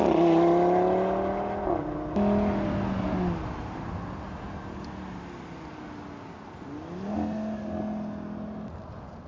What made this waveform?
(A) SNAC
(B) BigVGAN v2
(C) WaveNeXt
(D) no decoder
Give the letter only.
D